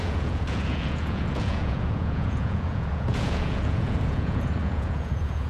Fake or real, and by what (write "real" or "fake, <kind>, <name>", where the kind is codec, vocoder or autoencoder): fake, vocoder, Vocos